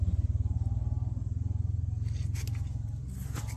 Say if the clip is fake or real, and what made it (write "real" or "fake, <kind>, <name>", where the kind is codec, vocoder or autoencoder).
real